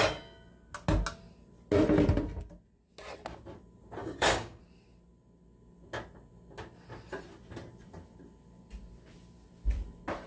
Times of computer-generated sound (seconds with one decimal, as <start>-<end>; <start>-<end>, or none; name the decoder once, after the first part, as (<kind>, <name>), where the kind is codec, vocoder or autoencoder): 4.0-4.6 (codec, DAC)